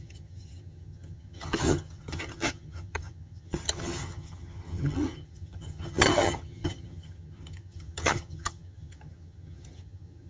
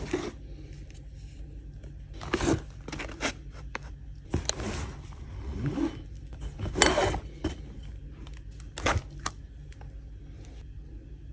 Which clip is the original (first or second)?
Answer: second